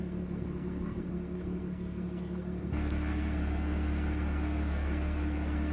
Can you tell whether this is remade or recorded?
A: remade